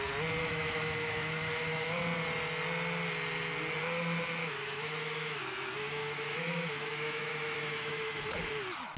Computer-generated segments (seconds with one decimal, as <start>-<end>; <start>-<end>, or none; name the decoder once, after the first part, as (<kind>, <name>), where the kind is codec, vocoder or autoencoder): 0.4-2.0 (autoencoder, DAC-VAE); 4.4-5.4; 6.0-8.3